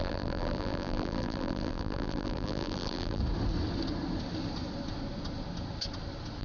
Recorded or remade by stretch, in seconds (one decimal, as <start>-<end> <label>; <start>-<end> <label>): 0.0-3.2 remade; 3.2-6.4 recorded